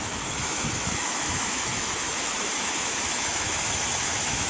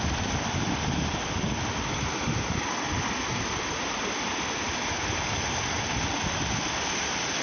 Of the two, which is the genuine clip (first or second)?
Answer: second